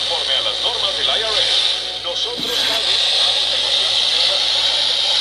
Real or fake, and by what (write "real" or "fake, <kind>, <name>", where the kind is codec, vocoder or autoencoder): real